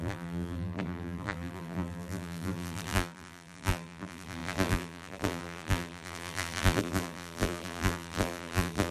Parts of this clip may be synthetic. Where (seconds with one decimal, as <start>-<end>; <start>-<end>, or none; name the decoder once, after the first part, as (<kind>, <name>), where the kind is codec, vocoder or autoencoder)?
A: 0.0-8.9 (vocoder, BigVGAN v2)